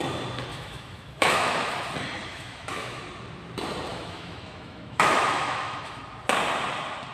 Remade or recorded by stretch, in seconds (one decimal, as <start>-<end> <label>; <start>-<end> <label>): 0.0-0.5 recorded; 0.5-1.7 remade; 1.7-2.3 recorded; 2.3-3.0 remade; 3.0-3.9 recorded; 3.9-6.0 remade; 6.0-7.1 recorded